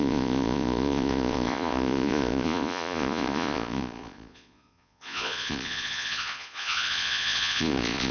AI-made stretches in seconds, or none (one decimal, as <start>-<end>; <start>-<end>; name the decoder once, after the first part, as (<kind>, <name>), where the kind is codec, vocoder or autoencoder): 0.0-8.1 (vocoder, Vocos)